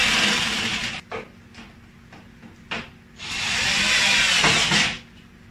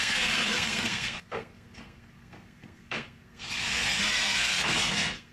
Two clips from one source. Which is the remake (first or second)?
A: second